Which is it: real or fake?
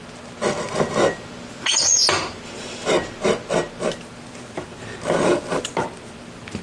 real